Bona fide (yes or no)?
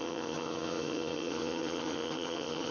no